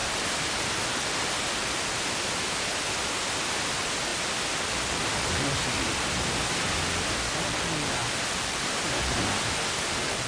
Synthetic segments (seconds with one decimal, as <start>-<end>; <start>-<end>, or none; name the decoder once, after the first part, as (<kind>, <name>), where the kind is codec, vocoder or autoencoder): none